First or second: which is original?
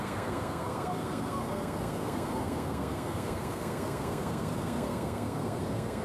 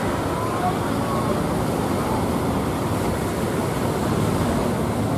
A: second